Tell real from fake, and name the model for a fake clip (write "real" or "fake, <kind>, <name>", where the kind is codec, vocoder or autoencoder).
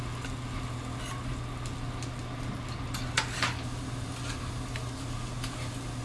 real